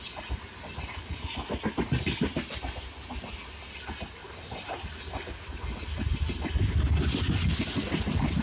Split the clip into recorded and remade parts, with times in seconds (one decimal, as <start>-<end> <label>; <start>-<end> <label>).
0.0-4.2 recorded; 4.2-4.8 remade; 4.8-8.4 recorded